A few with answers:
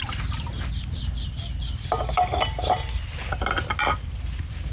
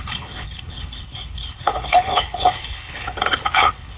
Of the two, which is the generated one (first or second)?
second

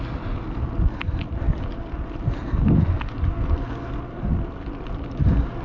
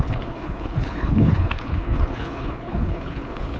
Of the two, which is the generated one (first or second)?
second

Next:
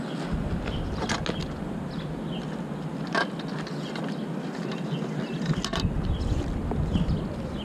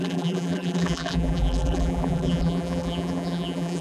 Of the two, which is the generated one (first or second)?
second